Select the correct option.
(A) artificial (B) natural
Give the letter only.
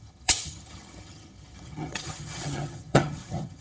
A